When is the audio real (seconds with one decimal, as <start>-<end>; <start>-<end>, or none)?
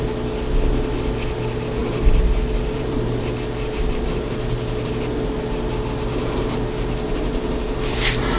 0.0-1.8; 4.3-8.4